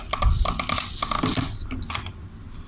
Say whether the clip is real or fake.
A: real